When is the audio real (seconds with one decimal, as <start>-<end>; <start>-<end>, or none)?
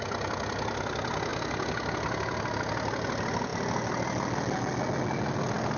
0.0-5.8